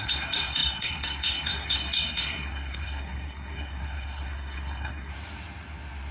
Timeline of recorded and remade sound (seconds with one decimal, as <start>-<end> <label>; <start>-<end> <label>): 0.0-5.1 remade; 5.1-6.1 recorded